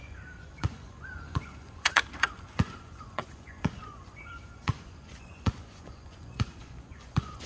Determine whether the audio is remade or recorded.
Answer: remade